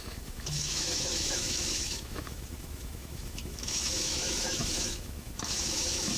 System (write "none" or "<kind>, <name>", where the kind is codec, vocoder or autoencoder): autoencoder, DAC-VAE